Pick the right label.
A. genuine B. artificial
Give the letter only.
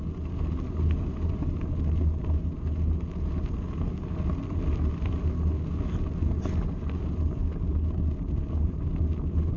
A